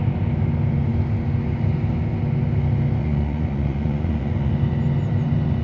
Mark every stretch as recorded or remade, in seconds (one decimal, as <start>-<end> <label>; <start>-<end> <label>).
0.0-3.0 recorded; 3.0-4.5 remade; 4.5-5.6 recorded